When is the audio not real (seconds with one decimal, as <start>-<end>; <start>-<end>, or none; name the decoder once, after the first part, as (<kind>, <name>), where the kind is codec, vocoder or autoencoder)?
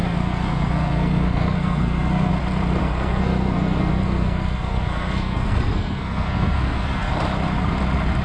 0.0-2.3 (codec, SNAC); 2.8-7.1